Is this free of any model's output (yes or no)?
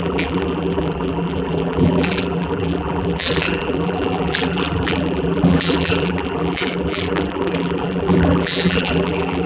no